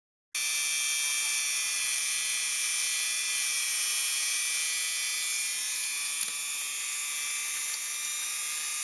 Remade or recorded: recorded